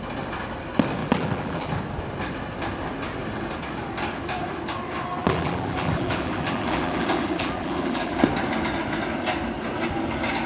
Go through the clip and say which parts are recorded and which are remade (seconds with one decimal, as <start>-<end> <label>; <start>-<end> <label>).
0.0-1.0 recorded; 1.0-1.7 remade; 1.7-5.2 recorded; 5.2-8.2 remade; 8.2-10.5 recorded